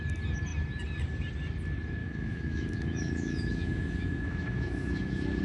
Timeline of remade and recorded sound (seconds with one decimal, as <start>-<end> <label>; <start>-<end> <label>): 0.0-2.0 recorded; 2.0-5.4 remade